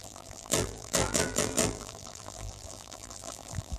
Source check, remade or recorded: remade